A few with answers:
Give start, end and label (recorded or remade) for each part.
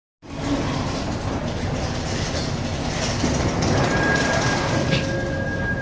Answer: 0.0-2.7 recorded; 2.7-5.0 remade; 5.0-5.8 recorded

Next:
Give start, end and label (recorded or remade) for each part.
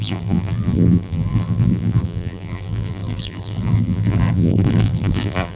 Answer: 0.0-5.6 remade